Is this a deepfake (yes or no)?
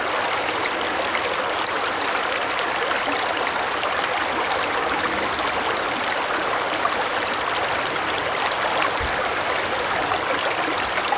no